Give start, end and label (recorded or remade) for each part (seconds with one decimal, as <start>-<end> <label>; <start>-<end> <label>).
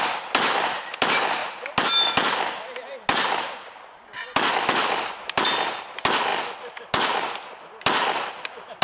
0.0-8.8 recorded